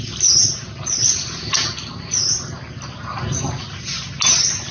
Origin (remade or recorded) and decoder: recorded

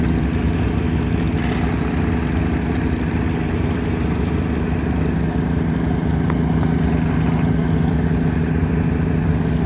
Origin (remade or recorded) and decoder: recorded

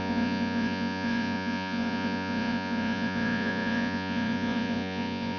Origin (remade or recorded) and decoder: remade, vocoder, Vocos